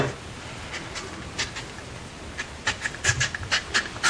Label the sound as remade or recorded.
recorded